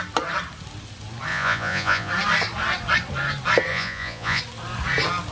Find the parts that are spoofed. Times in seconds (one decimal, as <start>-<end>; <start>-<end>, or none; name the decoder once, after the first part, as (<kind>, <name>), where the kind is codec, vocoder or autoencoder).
1.3-2.1 (vocoder, Vocos); 3.7-4.4